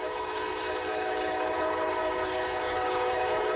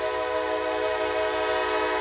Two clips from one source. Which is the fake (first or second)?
first